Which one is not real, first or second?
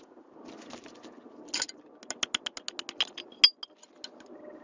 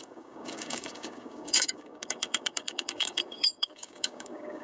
second